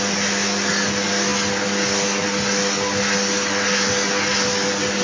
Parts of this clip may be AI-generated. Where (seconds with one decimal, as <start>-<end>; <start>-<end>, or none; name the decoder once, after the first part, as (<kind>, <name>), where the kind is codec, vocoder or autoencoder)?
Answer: none